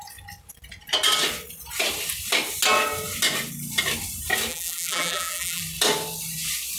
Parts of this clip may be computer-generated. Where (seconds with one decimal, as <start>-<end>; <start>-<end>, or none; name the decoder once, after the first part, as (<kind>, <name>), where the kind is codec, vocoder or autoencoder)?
4.5-5.6 (vocoder, BigVGAN v2)